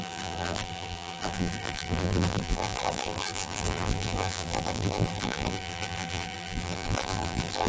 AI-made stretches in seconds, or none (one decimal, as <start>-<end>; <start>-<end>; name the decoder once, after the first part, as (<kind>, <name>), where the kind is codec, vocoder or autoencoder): 0.0-7.7 (vocoder, BigVGAN v2)

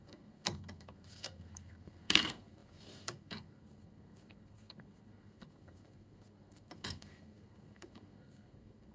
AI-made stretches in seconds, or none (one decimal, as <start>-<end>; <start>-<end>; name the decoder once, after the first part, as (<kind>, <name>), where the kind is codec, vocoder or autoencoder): 0.0-8.9 (codec, SNAC)